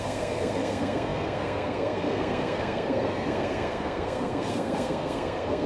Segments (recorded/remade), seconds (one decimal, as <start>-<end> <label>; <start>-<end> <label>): 0.0-5.7 remade